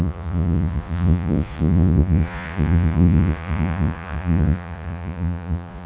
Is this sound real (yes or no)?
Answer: no